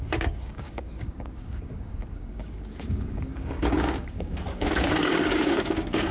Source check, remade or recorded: remade